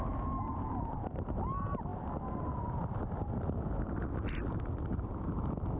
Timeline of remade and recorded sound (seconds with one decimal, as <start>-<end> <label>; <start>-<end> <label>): 0.0-5.8 recorded